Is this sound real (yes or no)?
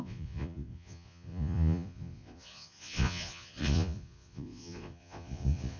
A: no